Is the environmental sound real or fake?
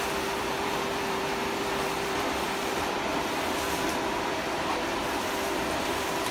fake